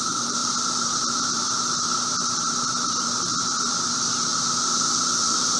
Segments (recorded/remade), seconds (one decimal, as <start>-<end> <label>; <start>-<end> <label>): 0.0-3.3 remade; 3.3-3.9 recorded; 3.9-5.6 remade